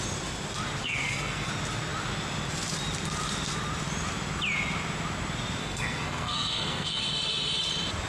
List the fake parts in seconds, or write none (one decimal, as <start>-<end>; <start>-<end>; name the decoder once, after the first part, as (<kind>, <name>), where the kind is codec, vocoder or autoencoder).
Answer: 0.8-1.5 (codec, SNAC); 5.6-7.0